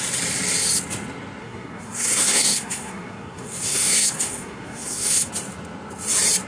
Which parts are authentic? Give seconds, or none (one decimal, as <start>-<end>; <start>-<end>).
0.0-1.4; 5.3-6.5